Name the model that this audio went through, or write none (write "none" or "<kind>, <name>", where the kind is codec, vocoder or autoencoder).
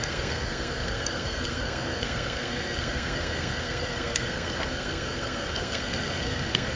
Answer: codec, SNAC